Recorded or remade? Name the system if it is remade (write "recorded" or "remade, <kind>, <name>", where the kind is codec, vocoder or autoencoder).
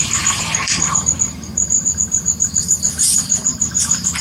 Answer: remade, vocoder, BigVGAN v2